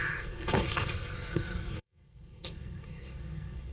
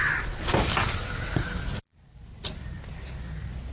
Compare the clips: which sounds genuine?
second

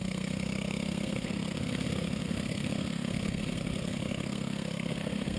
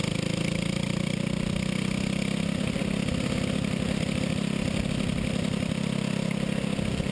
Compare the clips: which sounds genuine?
second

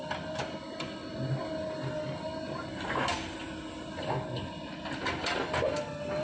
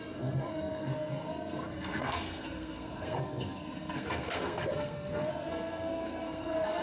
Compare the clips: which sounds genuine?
first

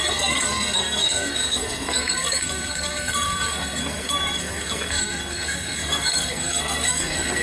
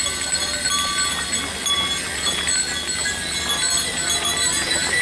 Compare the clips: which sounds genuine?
second